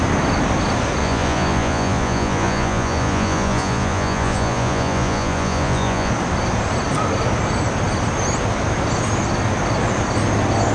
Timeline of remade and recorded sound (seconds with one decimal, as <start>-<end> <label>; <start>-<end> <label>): 0.0-1.0 recorded; 1.0-6.1 remade; 6.1-10.7 recorded